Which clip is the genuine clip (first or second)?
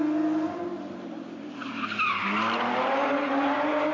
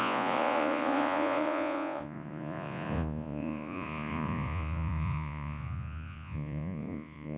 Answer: first